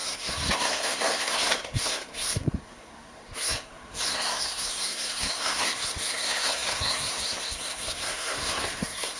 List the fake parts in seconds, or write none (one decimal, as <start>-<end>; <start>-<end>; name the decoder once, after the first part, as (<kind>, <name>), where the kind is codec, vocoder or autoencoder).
0.0-9.2 (codec, SNAC)